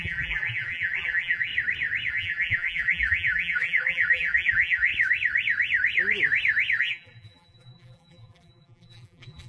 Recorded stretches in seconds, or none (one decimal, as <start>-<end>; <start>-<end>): 1.5-2.1; 4.9-6.8